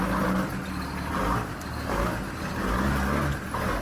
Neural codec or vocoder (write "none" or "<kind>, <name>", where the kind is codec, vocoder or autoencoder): none